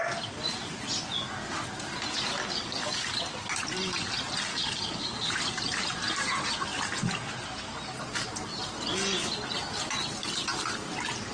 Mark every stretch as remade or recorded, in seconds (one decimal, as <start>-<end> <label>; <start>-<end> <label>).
0.0-2.4 recorded; 2.4-3.1 remade; 3.1-4.5 recorded; 4.5-5.3 remade; 5.3-11.3 recorded